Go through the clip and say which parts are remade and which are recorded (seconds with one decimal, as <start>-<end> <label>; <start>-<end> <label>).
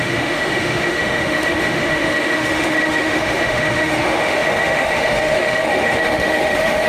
0.0-6.9 remade